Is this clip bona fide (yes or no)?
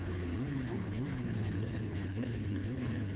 no